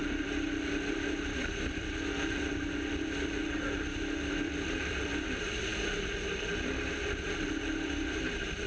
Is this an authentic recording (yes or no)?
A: no